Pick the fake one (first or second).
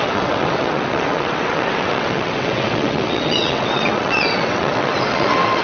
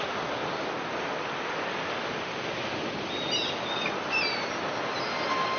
first